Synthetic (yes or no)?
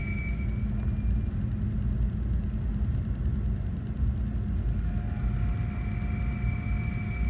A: no